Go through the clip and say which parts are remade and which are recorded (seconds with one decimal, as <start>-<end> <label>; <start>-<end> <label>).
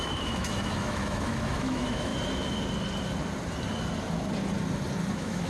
0.0-2.1 remade; 2.1-5.1 recorded; 5.1-5.5 remade